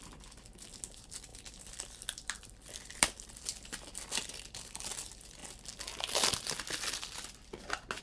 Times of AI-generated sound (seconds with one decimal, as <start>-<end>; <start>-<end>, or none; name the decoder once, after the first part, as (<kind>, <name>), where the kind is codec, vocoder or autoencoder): 1.3-4.4 (vocoder, BigVGAN v2)